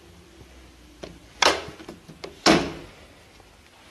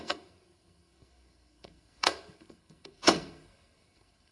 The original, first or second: first